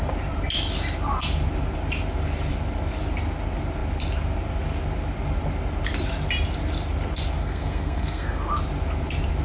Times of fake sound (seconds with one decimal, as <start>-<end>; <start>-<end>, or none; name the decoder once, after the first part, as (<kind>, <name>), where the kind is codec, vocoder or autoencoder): 7.4-8.5 (codec, SNAC)